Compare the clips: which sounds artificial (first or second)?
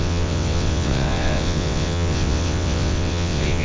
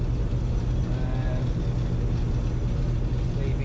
first